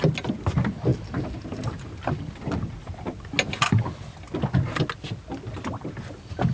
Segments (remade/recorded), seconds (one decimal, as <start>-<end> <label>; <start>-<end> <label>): 0.0-6.5 recorded